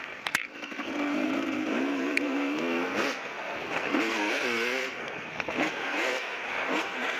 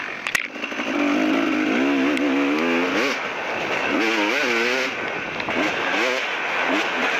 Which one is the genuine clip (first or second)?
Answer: second